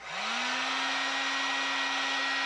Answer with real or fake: real